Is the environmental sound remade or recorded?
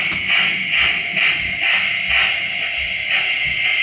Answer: recorded